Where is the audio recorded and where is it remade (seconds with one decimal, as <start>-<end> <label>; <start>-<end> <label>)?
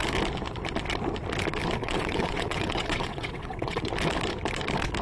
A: 0.0-1.8 recorded; 1.8-3.9 remade; 3.9-5.0 recorded